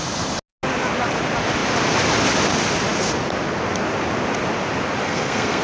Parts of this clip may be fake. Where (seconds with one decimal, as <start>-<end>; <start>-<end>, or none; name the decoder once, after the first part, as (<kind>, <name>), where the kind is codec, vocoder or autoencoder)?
5.0-5.6 (codec, SNAC)